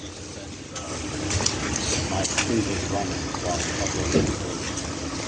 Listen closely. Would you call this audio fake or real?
real